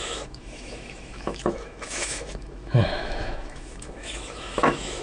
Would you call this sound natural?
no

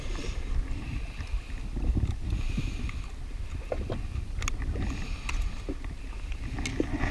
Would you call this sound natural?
yes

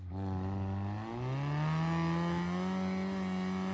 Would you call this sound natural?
yes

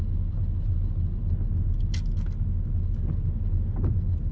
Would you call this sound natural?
yes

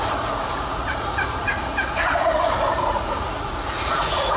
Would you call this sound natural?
no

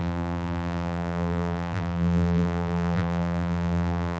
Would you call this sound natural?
no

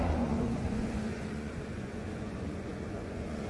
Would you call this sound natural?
no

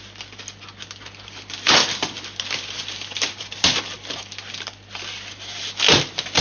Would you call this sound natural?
yes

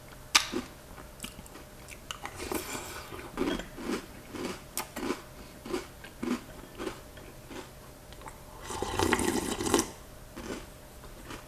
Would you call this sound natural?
yes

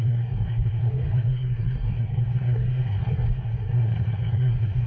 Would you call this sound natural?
no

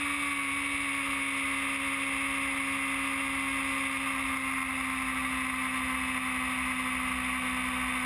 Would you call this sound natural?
yes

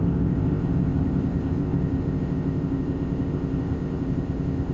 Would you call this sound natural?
no